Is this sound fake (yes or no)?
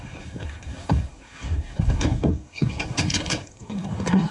yes